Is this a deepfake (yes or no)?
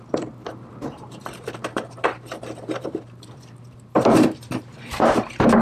yes